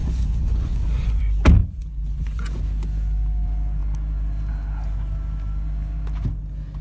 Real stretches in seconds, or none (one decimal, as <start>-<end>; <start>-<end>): 1.2-1.6; 2.6-6.8